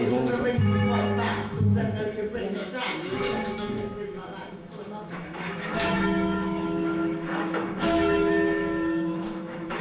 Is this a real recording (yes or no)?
no